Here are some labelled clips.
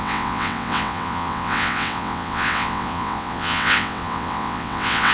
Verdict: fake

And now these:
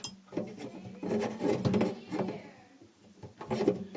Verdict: real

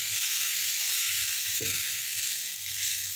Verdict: fake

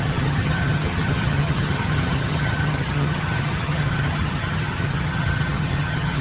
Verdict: fake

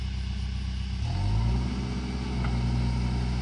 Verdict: real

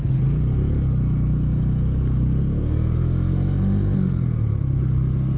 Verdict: real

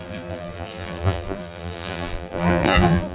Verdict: fake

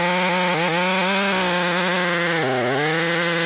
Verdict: real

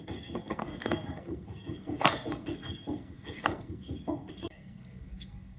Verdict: fake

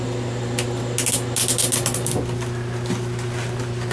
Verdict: real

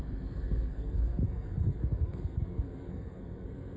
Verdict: fake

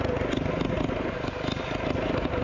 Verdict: real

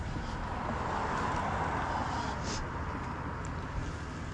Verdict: real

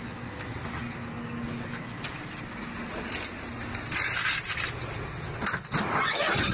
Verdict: real